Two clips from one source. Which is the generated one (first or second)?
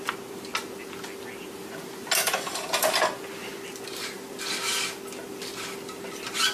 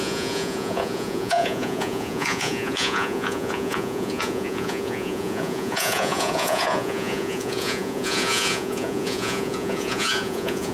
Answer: second